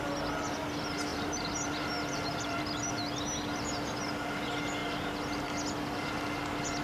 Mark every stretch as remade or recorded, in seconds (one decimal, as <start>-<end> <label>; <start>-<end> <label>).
0.0-1.1 recorded; 1.1-2.8 remade; 2.8-6.8 recorded